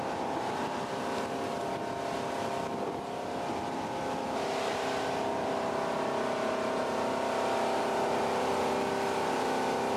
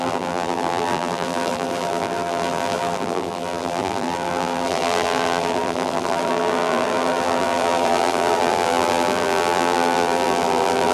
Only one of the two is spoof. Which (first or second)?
second